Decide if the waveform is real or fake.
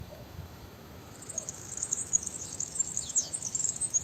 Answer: fake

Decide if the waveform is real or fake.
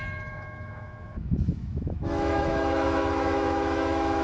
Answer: fake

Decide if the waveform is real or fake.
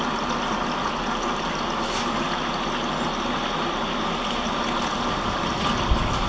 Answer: real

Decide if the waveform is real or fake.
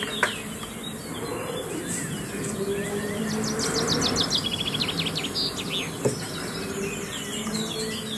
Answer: real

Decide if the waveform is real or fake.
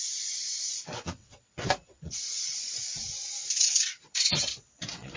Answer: fake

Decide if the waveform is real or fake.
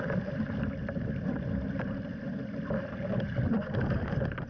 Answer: real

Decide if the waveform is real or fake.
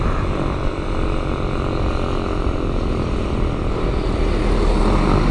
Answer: real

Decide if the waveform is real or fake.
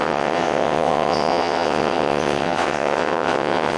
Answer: fake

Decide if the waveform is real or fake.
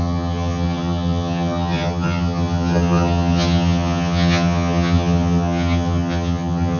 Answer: fake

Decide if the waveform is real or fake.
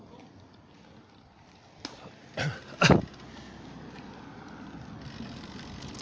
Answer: real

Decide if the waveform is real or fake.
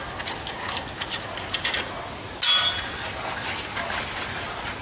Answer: real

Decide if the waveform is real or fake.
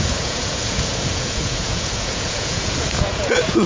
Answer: fake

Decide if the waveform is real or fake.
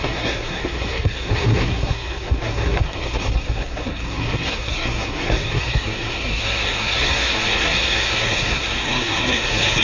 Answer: fake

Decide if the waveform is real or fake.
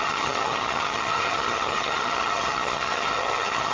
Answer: fake